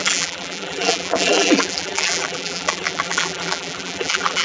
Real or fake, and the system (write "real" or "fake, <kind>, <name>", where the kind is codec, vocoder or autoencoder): fake, vocoder, BigVGAN v2